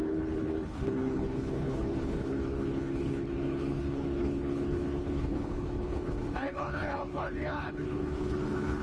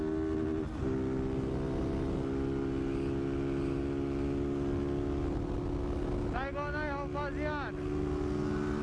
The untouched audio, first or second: second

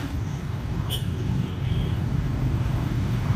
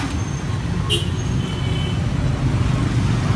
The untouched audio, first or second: second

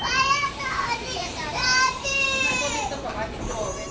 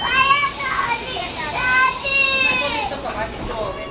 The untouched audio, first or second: second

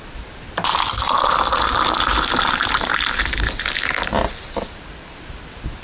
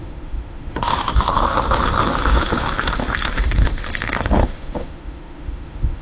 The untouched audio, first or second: first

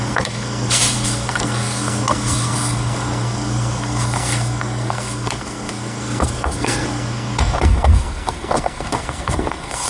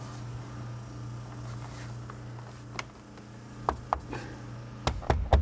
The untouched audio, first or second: second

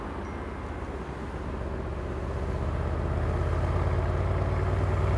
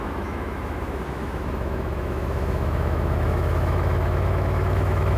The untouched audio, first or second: first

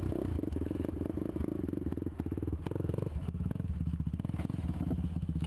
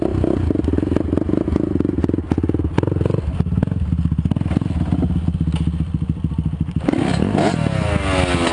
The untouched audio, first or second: second